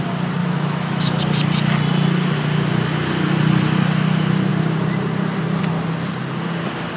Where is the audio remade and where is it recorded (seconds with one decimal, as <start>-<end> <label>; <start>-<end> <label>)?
0.0-0.4 recorded; 0.4-1.2 remade; 1.2-7.0 recorded